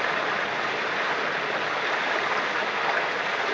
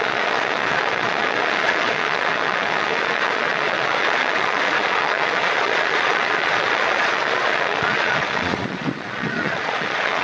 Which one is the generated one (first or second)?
second